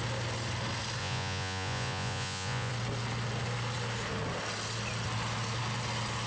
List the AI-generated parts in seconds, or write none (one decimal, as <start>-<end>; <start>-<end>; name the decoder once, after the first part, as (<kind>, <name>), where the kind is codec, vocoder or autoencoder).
1.0-2.7 (vocoder, Vocos)